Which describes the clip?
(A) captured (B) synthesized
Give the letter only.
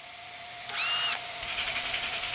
A